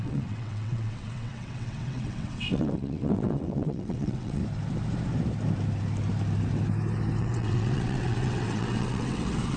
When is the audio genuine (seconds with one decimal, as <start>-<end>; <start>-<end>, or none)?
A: 4.4-7.2